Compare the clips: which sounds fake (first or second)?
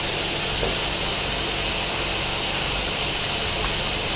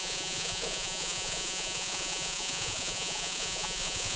second